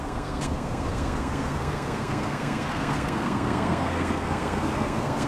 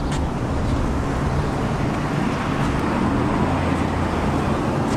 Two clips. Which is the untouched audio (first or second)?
second